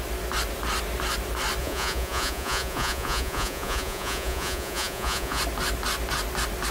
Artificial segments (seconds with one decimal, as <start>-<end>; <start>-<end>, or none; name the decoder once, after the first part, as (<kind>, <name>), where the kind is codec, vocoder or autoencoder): 1.6-5.4 (vocoder, Vocos)